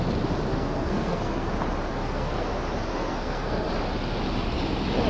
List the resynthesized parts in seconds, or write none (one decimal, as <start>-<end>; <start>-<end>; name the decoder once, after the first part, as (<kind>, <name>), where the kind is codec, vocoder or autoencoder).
0.5-1.5 (codec, SNAC); 1.9-2.5; 2.9-3.7